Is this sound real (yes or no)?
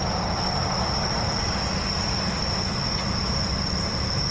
yes